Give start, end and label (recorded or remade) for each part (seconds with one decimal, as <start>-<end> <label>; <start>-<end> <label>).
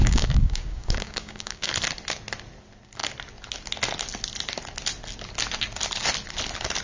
0.0-1.7 remade; 1.7-6.8 recorded